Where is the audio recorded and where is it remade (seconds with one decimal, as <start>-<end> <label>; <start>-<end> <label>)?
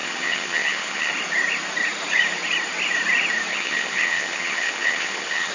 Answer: 0.0-1.1 remade; 1.1-3.5 recorded; 3.5-5.5 remade